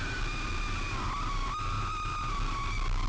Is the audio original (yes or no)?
yes